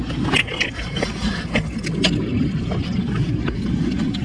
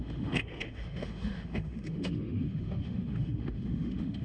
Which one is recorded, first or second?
first